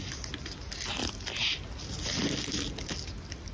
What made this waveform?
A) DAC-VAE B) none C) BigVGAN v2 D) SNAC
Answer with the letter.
B